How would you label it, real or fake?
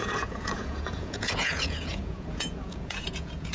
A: fake